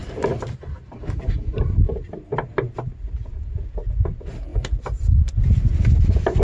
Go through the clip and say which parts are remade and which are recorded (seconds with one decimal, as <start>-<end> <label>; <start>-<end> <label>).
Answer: 0.0-1.3 remade; 1.3-4.5 recorded; 4.5-5.9 remade; 5.9-6.4 recorded